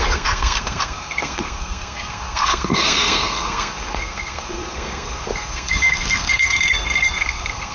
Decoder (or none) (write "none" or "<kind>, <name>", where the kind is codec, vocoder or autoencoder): codec, SNAC